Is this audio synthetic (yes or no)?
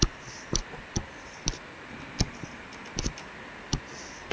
no